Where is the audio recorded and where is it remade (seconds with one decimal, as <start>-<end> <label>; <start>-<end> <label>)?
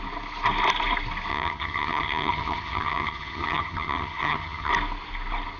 0.0-1.3 recorded; 1.3-4.7 remade; 4.7-5.6 recorded